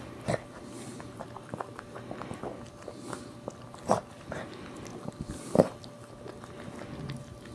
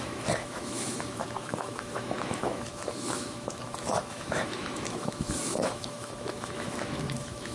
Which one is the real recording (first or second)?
first